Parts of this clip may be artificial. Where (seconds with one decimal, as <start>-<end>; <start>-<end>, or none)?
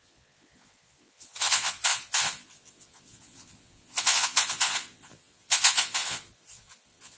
0.0-7.2